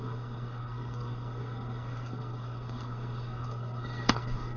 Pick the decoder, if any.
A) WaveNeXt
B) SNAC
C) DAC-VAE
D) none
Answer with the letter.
B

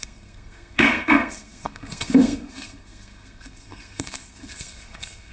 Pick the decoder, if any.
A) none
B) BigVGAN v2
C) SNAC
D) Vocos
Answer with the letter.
C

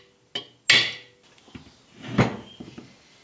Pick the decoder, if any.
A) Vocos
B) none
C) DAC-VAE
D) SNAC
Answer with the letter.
B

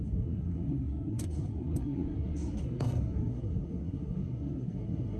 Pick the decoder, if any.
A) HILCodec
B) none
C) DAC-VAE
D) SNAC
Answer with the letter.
D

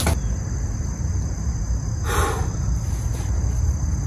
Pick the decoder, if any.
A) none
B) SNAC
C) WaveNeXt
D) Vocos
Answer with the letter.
A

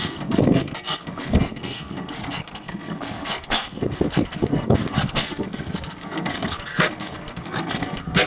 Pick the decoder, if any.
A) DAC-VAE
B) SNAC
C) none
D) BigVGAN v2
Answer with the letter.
B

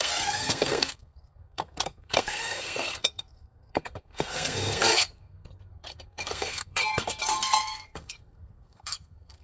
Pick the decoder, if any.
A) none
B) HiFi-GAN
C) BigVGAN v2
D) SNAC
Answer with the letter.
D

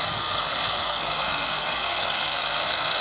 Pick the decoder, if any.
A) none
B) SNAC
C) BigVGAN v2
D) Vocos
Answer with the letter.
B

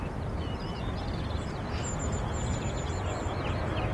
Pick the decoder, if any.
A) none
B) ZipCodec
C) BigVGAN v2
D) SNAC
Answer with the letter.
A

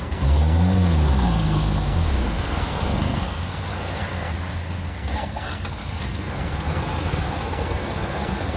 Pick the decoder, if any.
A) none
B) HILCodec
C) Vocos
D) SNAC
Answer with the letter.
D